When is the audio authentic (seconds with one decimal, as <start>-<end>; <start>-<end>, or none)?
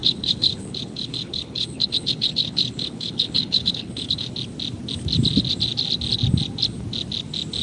4.3-7.6